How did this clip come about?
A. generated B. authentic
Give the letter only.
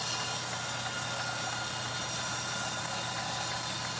B